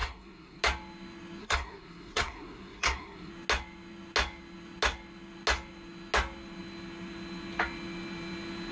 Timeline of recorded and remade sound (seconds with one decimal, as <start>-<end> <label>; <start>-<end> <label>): 0.0-0.6 remade; 0.6-1.4 recorded; 1.4-3.3 remade; 3.3-8.7 recorded